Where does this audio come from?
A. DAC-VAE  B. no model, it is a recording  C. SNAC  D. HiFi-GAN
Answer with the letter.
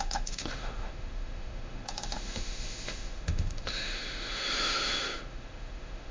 A